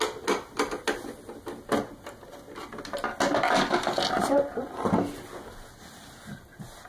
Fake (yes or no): no